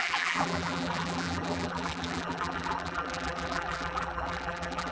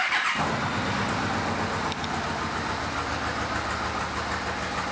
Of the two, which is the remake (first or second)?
first